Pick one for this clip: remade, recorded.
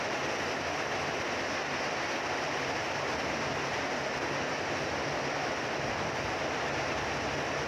recorded